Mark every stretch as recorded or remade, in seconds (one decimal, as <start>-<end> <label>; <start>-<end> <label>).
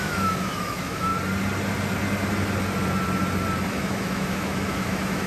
0.0-1.1 remade; 1.1-3.7 recorded; 3.7-5.3 remade